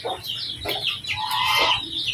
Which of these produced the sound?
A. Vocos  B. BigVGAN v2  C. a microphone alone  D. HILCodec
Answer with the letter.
C